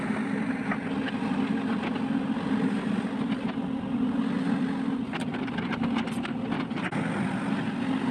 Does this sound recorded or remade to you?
recorded